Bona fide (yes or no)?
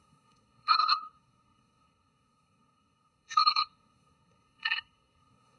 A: no